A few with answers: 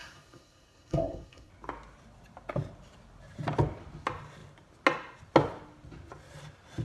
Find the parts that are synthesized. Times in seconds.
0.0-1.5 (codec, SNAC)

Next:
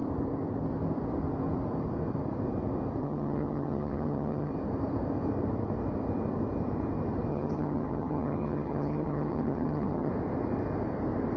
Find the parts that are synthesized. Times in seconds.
3.0-4.5 (vocoder, HiFi-GAN); 7.3-10.1

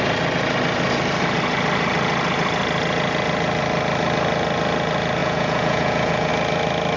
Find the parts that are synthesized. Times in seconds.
5.2-6.3 (vocoder, Vocos)

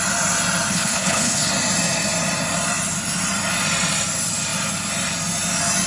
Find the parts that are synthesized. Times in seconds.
0.7-1.5 (codec, HILCodec)

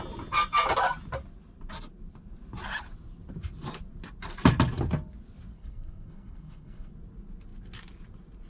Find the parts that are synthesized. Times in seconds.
5.5-6.9 (codec, SNAC)